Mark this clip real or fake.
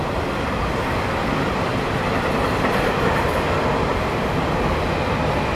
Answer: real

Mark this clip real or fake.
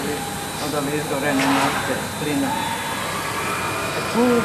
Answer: real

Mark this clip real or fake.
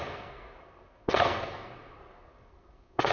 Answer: fake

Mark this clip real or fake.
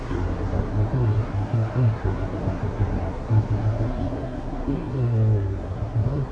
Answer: fake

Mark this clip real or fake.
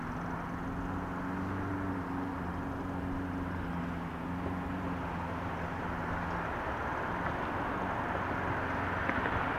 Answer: real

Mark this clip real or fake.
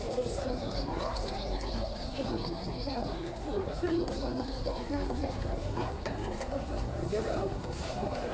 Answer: fake